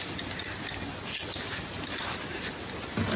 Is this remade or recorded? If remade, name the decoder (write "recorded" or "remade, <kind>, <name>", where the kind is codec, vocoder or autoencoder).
recorded